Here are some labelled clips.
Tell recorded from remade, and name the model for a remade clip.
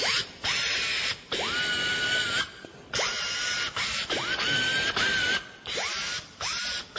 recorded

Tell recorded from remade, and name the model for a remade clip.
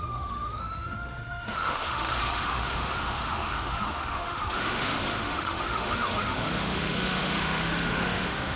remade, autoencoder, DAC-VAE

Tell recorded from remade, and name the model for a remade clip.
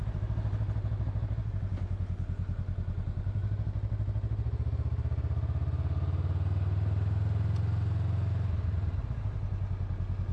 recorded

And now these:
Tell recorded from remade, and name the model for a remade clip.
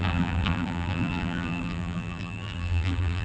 remade, vocoder, BigVGAN v2